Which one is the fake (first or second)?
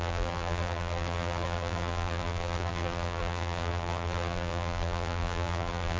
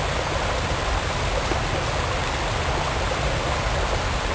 first